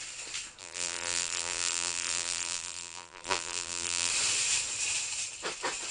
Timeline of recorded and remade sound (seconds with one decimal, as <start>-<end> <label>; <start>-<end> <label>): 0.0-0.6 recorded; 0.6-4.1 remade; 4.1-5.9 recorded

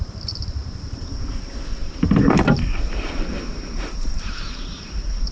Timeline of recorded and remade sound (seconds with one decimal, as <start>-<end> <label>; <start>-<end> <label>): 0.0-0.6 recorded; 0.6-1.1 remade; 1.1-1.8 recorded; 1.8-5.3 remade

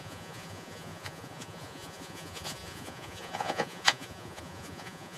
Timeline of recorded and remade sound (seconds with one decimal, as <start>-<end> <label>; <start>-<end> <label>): 0.0-5.2 remade

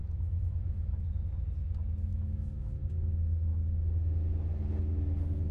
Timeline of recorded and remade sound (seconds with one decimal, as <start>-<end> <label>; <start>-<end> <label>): 0.0-1.1 remade; 1.1-2.1 recorded; 2.1-2.7 remade; 2.7-5.5 recorded

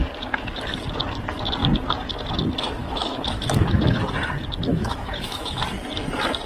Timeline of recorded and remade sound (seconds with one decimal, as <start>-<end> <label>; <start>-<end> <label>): 0.0-2.8 recorded; 2.8-4.0 remade; 4.0-4.7 recorded; 4.7-5.6 remade; 5.6-6.5 recorded

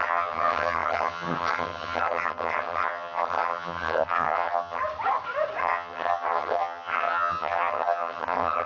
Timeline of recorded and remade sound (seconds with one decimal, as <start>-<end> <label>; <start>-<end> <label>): 0.0-4.8 remade; 4.8-5.6 recorded; 5.6-8.7 remade

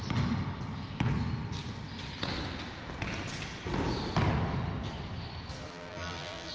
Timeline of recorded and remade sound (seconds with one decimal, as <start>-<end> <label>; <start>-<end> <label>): 0.0-5.7 recorded; 5.7-6.5 remade

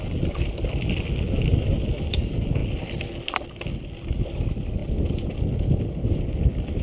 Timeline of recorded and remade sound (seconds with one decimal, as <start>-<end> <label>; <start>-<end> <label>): 0.0-4.8 recorded; 4.8-6.8 remade